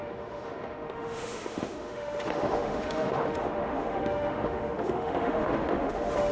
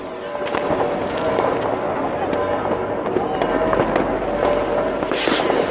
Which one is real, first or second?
second